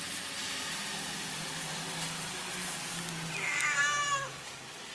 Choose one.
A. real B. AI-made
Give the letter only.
A